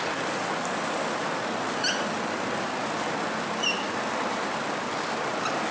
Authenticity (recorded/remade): recorded